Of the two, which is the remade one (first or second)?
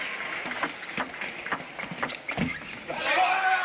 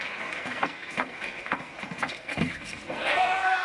second